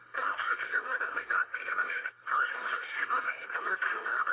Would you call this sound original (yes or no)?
no